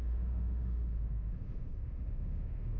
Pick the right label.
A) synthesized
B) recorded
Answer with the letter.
A